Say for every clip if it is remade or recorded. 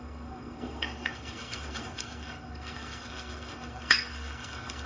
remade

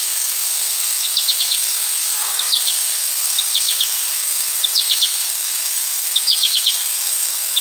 remade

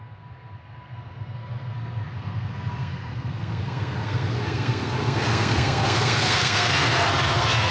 remade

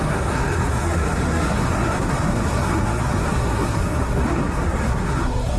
remade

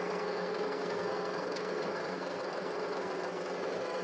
remade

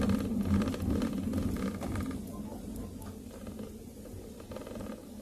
recorded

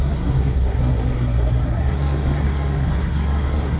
remade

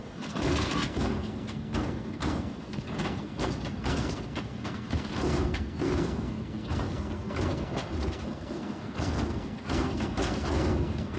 remade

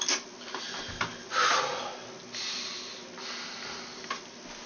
recorded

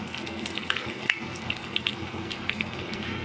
remade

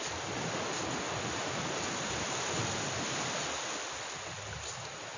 recorded